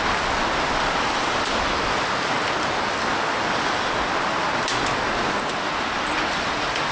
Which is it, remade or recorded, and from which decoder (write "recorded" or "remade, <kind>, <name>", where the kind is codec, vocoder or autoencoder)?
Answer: recorded